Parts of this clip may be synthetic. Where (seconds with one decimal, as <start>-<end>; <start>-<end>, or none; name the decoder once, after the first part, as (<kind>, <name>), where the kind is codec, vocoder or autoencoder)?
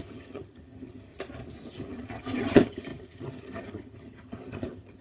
0.0-1.1 (vocoder, HiFi-GAN); 1.7-5.0